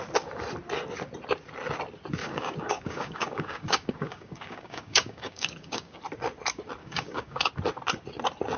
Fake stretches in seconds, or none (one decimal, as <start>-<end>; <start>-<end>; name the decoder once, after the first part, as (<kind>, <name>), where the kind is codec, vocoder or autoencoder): 2.2-6.0 (codec, DAC); 6.8-7.5

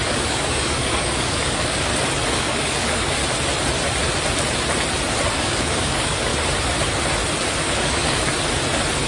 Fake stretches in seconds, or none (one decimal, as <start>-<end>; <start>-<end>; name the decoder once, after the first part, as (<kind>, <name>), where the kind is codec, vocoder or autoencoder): 0.0-1.9 (codec, DAC); 2.4-3.2; 5.4-6.3; 7.6-8.3

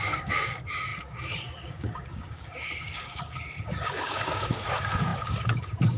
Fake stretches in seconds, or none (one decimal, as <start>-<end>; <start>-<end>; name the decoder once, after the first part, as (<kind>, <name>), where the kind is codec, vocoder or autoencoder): 0.0-6.0 (codec, DAC)

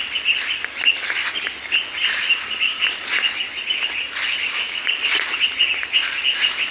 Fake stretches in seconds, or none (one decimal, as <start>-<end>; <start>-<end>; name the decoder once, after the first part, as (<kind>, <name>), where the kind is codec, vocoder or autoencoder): 4.4-5.0 (codec, DAC)

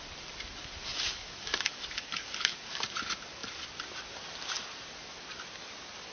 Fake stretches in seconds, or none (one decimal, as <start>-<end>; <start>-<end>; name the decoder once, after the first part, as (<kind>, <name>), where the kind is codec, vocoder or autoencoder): 0.9-2.7 (codec, DAC)